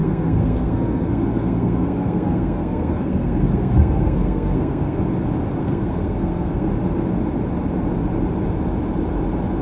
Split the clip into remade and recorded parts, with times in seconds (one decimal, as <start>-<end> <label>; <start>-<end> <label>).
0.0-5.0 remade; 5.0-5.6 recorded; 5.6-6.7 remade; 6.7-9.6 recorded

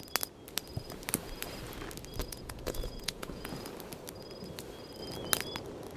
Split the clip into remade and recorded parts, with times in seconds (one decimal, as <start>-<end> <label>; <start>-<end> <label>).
0.0-2.2 recorded; 2.2-3.5 remade; 3.5-6.0 recorded

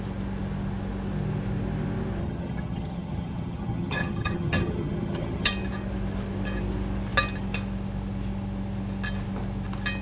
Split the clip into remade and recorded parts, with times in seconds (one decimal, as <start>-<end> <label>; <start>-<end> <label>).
0.0-2.2 recorded; 2.2-5.5 remade; 5.5-10.0 recorded